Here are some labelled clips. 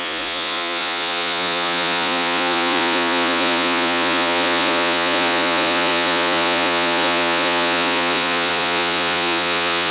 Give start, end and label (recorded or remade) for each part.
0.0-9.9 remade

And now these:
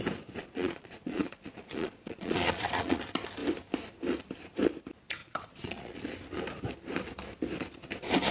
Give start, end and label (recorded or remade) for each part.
0.0-0.4 recorded; 0.4-3.0 remade; 3.0-5.2 recorded; 5.2-6.0 remade; 6.0-8.3 recorded